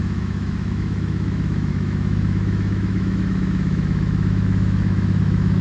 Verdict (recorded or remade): remade